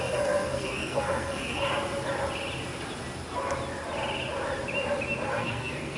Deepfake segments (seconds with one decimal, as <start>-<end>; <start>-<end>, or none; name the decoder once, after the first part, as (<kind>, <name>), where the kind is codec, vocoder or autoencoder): 0.0-1.7 (codec, SNAC); 5.3-6.0